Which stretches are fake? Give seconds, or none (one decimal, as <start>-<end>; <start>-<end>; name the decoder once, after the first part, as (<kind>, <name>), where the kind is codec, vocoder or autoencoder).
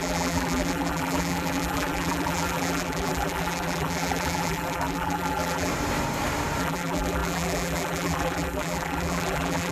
0.0-5.7 (vocoder, BigVGAN v2); 6.6-9.7